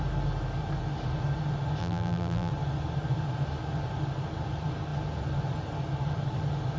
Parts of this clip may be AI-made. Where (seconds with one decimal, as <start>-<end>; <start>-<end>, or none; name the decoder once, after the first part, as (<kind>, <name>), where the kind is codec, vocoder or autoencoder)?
1.8-2.5 (vocoder, BigVGAN v2)